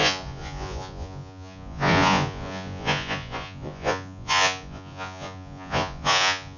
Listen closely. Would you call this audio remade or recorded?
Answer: remade